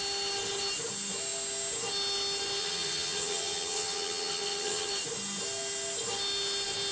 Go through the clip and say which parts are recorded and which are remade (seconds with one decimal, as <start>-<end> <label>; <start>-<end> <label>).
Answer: 0.0-2.6 recorded; 2.6-4.9 remade; 4.9-6.9 recorded

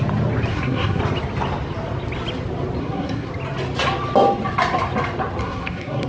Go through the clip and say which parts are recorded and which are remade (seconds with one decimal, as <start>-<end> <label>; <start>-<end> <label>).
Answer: 0.0-0.5 recorded; 0.5-1.0 remade; 1.0-2.8 recorded; 2.8-3.3 remade; 3.3-5.4 recorded; 5.4-6.1 remade